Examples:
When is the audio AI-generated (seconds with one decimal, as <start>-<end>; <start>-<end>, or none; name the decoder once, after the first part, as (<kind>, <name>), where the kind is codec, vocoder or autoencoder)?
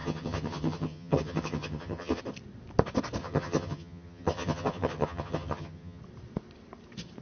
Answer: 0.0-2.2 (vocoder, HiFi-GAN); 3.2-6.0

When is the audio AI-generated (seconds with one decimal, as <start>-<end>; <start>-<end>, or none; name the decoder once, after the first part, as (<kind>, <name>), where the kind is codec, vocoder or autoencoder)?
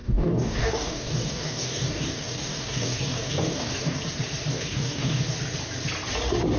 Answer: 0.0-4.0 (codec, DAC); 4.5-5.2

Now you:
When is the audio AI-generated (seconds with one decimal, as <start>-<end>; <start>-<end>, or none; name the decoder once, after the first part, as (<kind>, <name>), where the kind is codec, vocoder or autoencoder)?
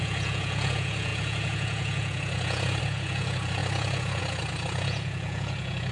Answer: 0.0-5.9 (vocoder, Vocos)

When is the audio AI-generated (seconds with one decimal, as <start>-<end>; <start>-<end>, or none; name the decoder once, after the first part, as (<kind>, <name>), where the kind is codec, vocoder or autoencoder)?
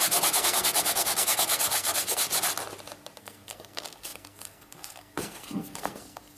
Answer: 0.0-2.2 (codec, SNAC); 3.2-6.4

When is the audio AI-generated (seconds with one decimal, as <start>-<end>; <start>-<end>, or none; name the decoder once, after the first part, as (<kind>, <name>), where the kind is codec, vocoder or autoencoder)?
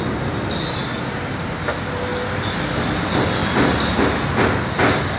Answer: none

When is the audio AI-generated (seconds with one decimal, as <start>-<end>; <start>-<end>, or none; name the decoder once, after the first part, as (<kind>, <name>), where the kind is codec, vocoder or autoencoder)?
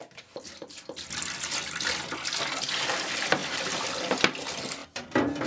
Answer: 3.4-4.1 (vocoder, BigVGAN v2); 4.8-5.5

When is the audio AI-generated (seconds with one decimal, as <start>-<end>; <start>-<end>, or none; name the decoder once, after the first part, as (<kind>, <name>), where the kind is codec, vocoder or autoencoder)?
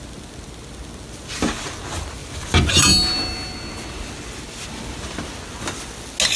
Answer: none